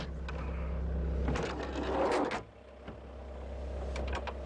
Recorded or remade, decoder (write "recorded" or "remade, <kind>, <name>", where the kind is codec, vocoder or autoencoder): recorded